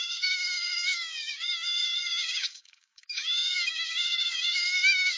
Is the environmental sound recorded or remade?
remade